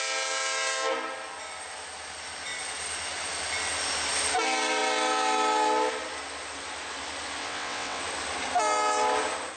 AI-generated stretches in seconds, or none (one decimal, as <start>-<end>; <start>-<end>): 7.4-8.0